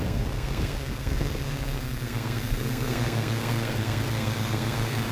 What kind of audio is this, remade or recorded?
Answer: remade